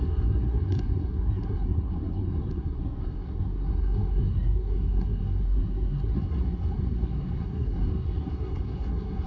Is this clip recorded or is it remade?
remade